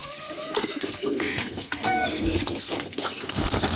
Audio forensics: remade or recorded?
remade